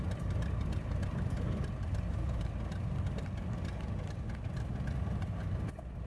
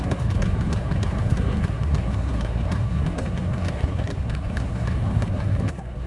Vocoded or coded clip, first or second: second